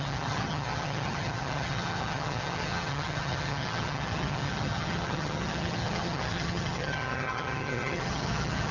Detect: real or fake fake